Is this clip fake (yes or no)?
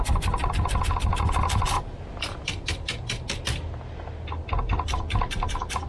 no